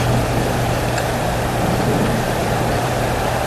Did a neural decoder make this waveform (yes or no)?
yes